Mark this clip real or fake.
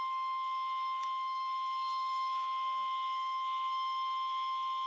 fake